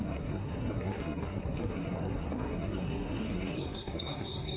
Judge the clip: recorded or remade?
remade